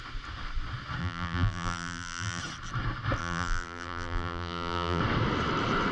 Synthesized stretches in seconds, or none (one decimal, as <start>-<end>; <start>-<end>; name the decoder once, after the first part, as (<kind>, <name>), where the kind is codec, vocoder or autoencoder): 1.0-2.4 (vocoder, BigVGAN v2); 3.2-5.0